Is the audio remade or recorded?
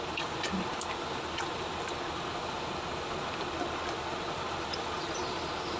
recorded